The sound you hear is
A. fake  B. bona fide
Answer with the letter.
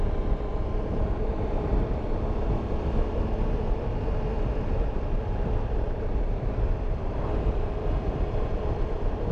A